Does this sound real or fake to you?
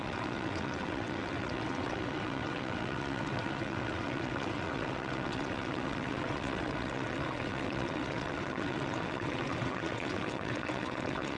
fake